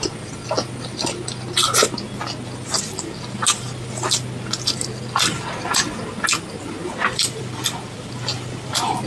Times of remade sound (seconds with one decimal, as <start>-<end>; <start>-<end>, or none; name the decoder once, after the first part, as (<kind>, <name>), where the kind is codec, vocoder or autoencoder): none